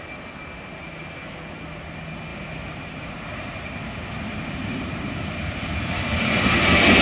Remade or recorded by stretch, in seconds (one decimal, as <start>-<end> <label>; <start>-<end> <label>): 0.0-2.3 recorded; 2.3-6.5 remade; 6.5-7.0 recorded